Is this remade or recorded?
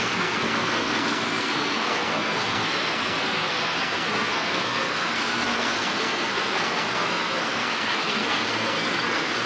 remade